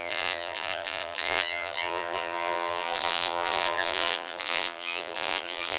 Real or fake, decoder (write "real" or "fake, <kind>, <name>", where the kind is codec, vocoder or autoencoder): fake, vocoder, BigVGAN v2